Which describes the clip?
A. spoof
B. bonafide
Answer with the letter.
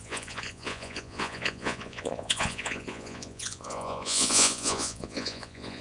A